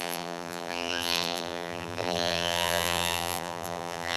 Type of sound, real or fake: fake